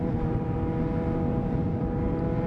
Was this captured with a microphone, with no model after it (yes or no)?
yes